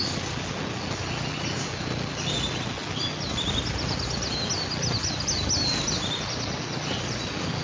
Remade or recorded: recorded